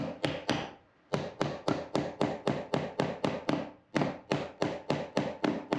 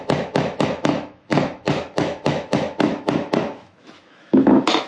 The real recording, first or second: first